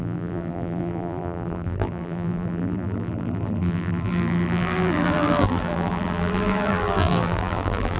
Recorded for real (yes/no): no